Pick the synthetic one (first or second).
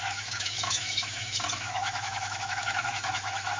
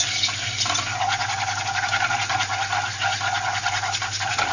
first